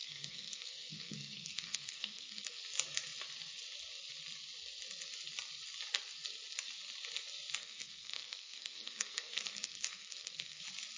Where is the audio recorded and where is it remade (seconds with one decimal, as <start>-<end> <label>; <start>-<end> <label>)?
0.0-2.6 remade; 2.6-7.6 recorded; 7.6-10.6 remade; 10.6-11.0 recorded